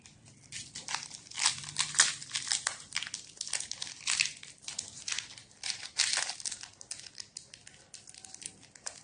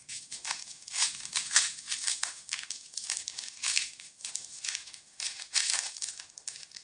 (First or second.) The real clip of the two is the first